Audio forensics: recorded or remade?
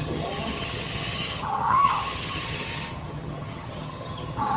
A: remade